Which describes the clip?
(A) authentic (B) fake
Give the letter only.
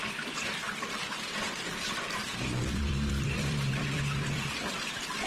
B